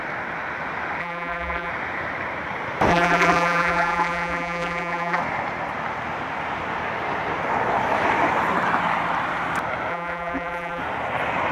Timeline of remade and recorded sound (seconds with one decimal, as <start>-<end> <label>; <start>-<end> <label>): 0.0-1.0 recorded; 1.0-1.7 remade; 1.7-2.9 recorded; 2.9-5.2 remade; 5.2-9.9 recorded; 9.9-10.8 remade; 10.8-11.5 recorded